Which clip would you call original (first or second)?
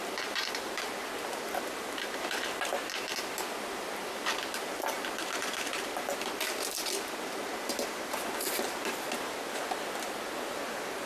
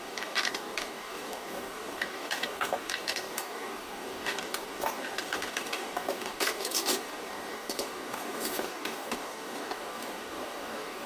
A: first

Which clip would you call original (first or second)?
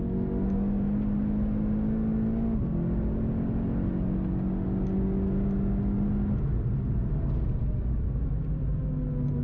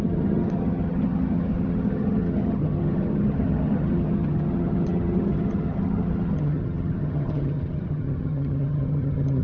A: first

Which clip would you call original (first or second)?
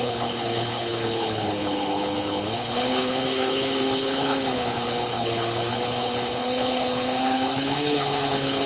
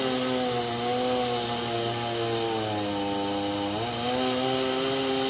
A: second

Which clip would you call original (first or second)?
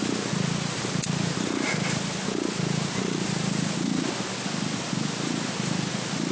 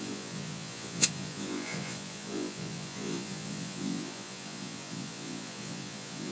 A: first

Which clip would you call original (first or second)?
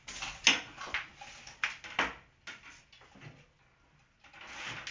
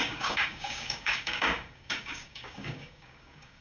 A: first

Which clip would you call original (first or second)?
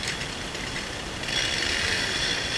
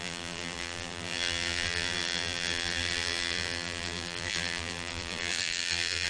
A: first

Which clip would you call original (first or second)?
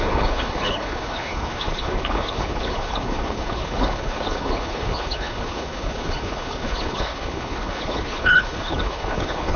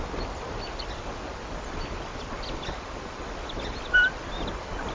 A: second